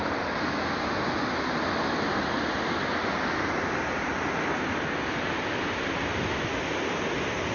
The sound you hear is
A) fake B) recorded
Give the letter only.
B